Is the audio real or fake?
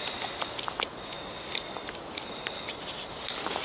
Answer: real